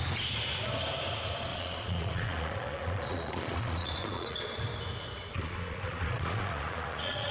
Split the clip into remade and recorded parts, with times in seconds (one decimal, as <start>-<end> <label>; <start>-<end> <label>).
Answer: 0.0-1.5 recorded; 1.5-4.6 remade; 4.6-5.3 recorded; 5.3-7.3 remade